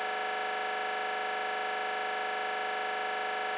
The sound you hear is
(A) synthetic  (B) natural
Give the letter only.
B